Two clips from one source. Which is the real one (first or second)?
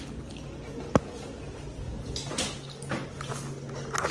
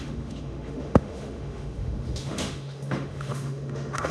first